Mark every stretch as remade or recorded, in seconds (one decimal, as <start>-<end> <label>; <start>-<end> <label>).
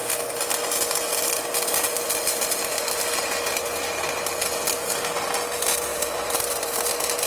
0.0-5.9 recorded; 5.9-6.8 remade; 6.8-7.3 recorded